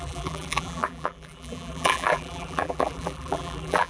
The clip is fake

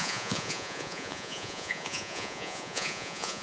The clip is fake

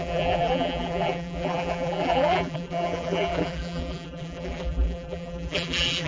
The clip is fake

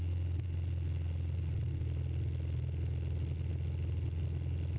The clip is real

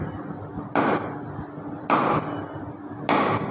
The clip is real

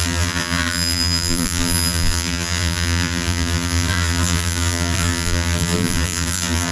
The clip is fake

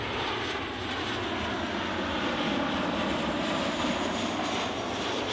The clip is real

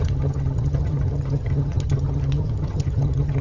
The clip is fake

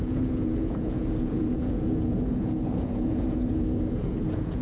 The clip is fake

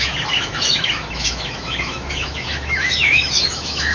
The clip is fake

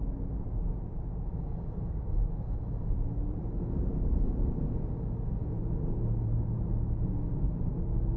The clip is real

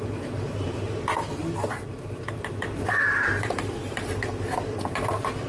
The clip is fake